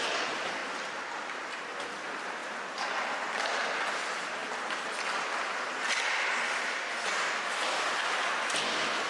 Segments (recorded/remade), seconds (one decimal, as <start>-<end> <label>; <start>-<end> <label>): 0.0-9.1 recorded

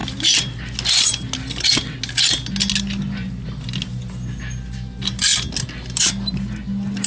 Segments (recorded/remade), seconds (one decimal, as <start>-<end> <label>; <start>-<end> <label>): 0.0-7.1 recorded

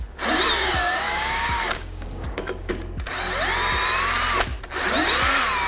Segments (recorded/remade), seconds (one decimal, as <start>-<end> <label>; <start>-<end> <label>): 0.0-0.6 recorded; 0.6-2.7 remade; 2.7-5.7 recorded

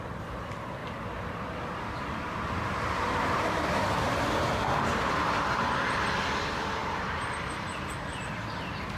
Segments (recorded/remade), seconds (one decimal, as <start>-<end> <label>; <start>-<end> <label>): 0.0-0.8 recorded; 0.8-5.8 remade; 5.8-6.8 recorded; 6.8-7.9 remade; 7.9-9.0 recorded

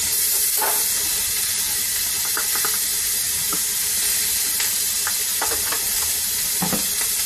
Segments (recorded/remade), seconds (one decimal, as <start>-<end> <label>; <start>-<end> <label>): 0.0-7.3 recorded

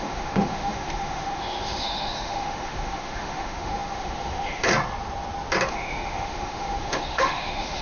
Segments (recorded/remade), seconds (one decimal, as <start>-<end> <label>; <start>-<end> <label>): 0.0-4.7 remade; 4.7-5.7 recorded; 5.7-7.8 remade

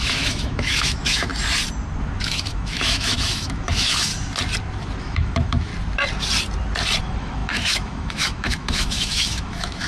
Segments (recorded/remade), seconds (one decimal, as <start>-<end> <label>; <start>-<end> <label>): 0.0-1.3 remade; 1.3-2.2 recorded; 2.2-4.1 remade; 4.1-5.0 recorded; 5.0-5.7 remade; 5.7-7.0 recorded; 7.0-9.9 remade